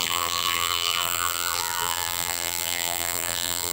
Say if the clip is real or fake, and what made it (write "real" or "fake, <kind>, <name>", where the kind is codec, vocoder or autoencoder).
fake, vocoder, BigVGAN v2